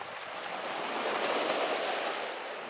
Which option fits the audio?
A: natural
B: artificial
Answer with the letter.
A